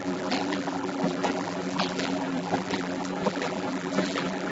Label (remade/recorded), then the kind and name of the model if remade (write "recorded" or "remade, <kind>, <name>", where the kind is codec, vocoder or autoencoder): remade, vocoder, BigVGAN v2